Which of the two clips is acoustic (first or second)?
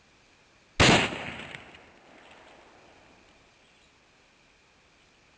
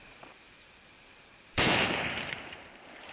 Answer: first